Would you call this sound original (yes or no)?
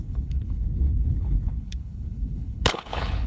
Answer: no